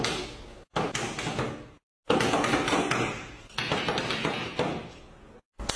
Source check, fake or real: real